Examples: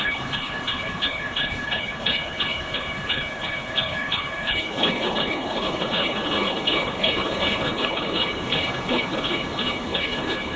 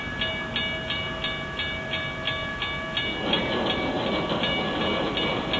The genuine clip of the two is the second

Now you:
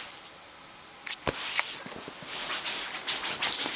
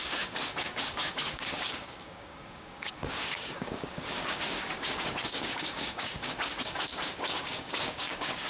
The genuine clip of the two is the first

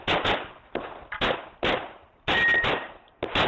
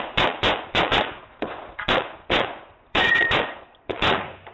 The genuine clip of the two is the first